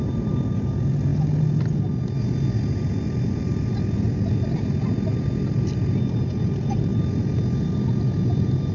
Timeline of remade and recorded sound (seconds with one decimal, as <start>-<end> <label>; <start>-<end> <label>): 0.0-8.7 recorded